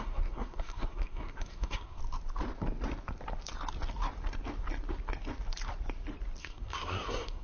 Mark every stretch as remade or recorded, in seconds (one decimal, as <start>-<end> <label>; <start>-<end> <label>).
0.0-2.0 remade; 2.0-6.4 recorded; 6.4-7.4 remade